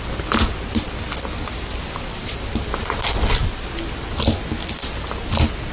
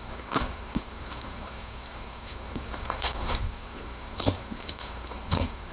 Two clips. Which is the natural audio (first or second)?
first